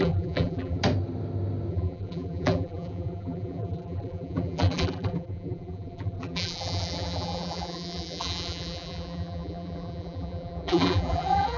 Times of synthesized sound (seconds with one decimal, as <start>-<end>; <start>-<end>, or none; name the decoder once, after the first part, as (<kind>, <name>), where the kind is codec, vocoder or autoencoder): 0.0-0.8 (vocoder, BigVGAN v2); 1.7-11.6